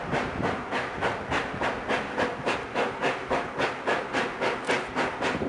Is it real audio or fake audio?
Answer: real